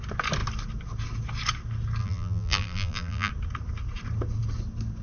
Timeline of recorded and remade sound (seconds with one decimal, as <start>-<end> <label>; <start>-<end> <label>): 0.0-2.0 recorded; 2.0-3.3 remade; 3.3-5.0 recorded